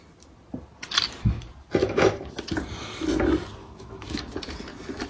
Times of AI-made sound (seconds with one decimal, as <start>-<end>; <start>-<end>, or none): 1.8-2.4; 3.6-4.2